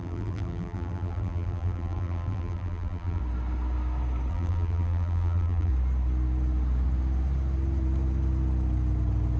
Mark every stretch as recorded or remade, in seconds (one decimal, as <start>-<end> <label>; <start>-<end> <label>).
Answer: 0.0-3.2 remade; 3.2-4.3 recorded; 4.3-5.7 remade; 5.7-9.4 recorded